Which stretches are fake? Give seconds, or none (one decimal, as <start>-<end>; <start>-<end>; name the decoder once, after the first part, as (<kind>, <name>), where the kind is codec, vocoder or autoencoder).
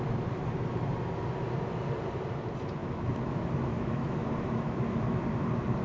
2.8-5.2 (autoencoder, DAC-VAE)